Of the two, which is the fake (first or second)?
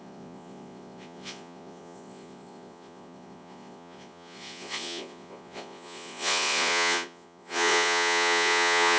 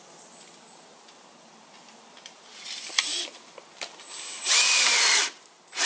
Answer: first